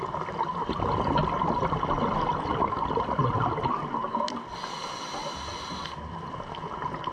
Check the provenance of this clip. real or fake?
real